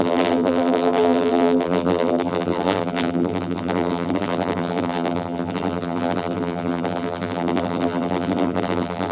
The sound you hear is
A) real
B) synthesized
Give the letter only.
B